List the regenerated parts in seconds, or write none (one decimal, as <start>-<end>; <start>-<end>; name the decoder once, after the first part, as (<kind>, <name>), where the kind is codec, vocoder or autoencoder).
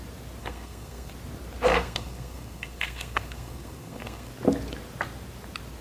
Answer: 0.4-1.1 (codec, SNAC); 1.7-4.3